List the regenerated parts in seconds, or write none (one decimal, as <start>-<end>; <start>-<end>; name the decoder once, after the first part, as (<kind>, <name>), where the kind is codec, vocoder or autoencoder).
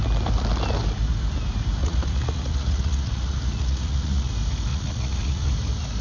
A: 1.8-4.3 (vocoder, Vocos); 4.7-5.5